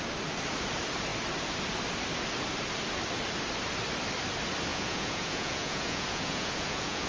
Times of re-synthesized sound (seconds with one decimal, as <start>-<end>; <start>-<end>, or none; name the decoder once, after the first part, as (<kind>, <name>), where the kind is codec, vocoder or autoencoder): 4.7-7.1 (vocoder, Vocos)